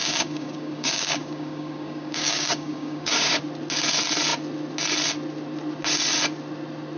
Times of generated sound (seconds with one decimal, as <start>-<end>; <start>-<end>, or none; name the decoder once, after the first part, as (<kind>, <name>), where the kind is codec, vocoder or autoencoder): 0.0-3.4 (codec, DAC)